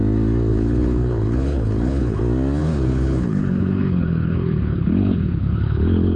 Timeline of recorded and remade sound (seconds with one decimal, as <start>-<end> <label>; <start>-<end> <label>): 0.0-0.5 recorded; 0.5-2.2 remade; 2.2-2.6 recorded; 2.6-6.2 remade